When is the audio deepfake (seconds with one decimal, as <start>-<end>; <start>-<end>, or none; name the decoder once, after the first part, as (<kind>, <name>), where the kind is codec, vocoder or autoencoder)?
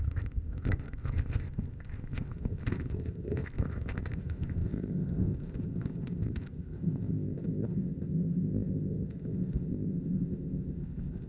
0.0-11.3 (codec, ZipCodec)